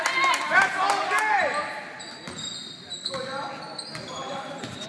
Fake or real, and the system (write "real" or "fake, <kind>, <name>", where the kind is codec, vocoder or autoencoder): real